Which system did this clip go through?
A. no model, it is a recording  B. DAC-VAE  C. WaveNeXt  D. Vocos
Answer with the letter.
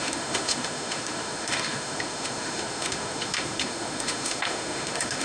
B